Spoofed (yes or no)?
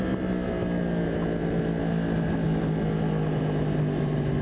no